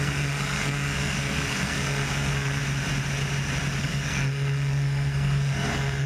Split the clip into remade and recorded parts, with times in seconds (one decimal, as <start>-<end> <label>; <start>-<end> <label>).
0.0-2.6 remade; 2.6-3.8 recorded; 3.8-6.1 remade